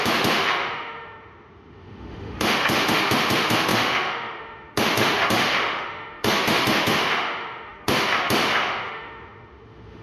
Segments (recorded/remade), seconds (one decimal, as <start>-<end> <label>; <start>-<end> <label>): 0.0-10.0 remade